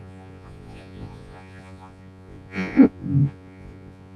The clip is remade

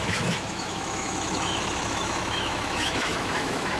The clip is remade